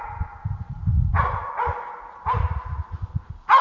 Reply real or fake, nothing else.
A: real